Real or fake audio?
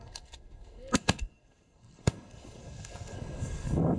fake